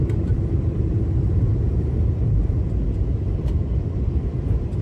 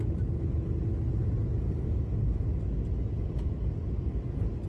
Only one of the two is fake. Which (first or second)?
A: first